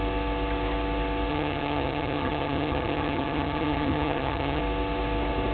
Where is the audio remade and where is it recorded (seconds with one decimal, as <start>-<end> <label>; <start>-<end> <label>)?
0.0-1.3 recorded; 1.3-4.6 remade; 4.6-5.5 recorded